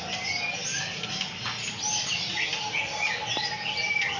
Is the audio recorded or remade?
recorded